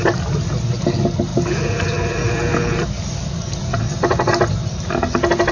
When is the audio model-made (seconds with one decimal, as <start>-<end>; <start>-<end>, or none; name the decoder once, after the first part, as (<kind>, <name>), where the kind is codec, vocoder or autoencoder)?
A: none